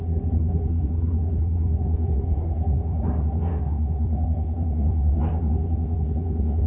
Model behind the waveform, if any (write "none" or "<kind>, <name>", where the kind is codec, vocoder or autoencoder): codec, SNAC